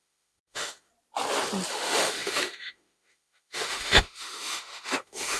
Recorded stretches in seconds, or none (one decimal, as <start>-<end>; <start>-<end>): 0.9-1.7